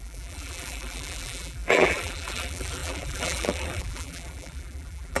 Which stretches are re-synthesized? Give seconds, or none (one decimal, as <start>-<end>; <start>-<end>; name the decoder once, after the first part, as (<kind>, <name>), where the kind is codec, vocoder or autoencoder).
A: 0.0-5.2 (vocoder, BigVGAN v2)